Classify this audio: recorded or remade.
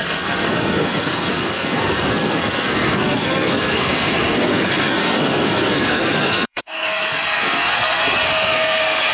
remade